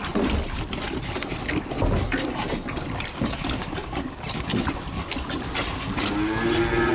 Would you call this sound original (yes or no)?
yes